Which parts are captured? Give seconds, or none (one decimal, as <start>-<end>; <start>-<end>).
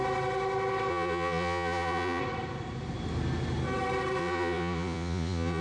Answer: 0.0-0.9; 2.2-4.2